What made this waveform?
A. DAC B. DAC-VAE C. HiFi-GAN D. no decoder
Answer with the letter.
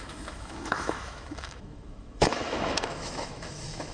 B